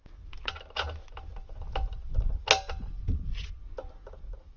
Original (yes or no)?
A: yes